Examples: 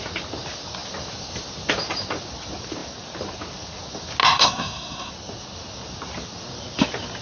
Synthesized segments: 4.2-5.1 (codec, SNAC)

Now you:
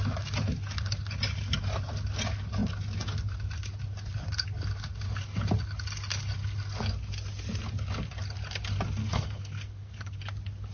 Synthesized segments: 9.0-10.2 (codec, SNAC)

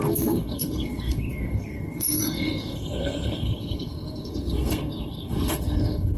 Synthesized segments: 0.0-6.2 (codec, SNAC)

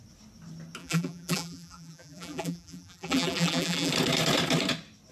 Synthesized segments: 0.8-3.9 (vocoder, BigVGAN v2)

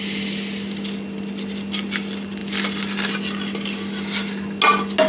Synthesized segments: none

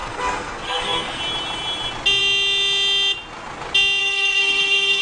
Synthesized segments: 0.0-1.2 (codec, SNAC); 4.0-5.0

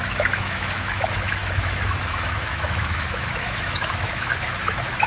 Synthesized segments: 0.0-5.1 (autoencoder, DAC-VAE)